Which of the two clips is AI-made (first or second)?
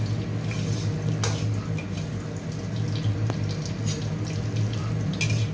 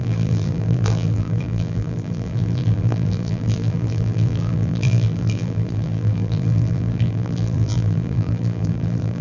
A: second